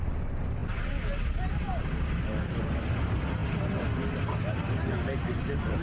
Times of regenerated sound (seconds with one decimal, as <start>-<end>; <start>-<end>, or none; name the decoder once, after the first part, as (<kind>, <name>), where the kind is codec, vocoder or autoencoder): none

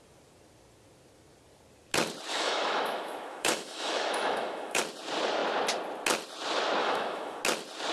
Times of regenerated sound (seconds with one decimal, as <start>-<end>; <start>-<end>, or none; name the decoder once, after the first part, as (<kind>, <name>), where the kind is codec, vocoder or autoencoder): 2.3-4.8 (autoencoder, DAC-VAE); 6.8-7.4

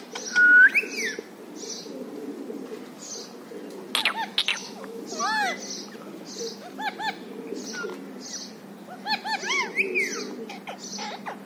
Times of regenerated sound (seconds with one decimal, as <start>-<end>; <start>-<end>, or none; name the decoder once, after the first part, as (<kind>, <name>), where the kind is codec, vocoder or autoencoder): 4.5-5.0 (autoencoder, DAC-VAE)

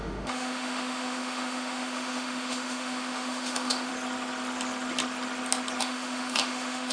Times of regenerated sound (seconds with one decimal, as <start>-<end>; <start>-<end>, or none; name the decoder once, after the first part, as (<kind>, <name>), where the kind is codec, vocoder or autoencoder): 0.0-3.9 (autoencoder, DAC-VAE); 5.8-6.9

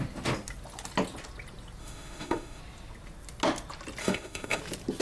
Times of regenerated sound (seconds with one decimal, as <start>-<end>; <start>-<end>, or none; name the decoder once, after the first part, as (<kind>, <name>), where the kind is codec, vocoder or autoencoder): 1.8-2.6 (autoencoder, DAC-VAE); 4.0-4.6

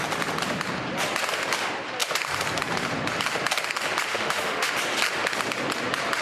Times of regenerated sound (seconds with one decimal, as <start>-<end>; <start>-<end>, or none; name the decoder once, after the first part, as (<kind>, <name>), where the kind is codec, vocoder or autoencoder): 4.1-4.7 (autoencoder, DAC-VAE)

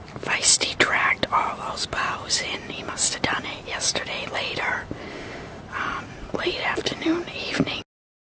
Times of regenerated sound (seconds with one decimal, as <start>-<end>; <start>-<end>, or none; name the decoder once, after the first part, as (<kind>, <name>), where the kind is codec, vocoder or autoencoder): 5.1-5.6 (autoencoder, DAC-VAE)